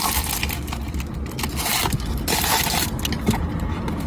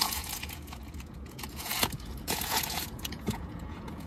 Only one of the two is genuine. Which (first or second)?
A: first